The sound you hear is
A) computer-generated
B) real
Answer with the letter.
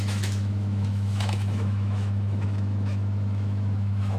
A